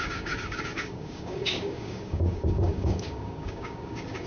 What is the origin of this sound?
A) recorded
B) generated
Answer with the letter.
B